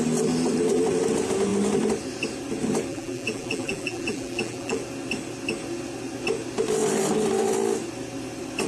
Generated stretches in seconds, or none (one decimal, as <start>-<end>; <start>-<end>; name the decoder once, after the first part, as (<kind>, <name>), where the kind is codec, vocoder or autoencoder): 2.9-4.8 (vocoder, BigVGAN v2)